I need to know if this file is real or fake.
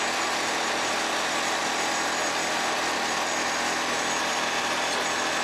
real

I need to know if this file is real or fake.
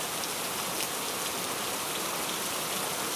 real